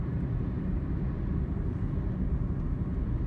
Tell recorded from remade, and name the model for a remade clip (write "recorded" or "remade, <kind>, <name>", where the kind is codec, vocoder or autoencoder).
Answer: recorded